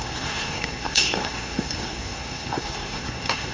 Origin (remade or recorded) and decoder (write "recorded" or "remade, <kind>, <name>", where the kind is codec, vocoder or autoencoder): remade, codec, SNAC